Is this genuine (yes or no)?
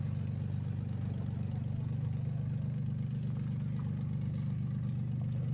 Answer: yes